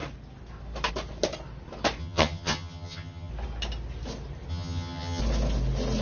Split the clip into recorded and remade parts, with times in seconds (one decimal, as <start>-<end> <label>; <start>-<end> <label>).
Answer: 0.0-2.0 recorded; 2.0-3.3 remade; 3.3-4.5 recorded; 4.5-5.2 remade; 5.2-6.0 recorded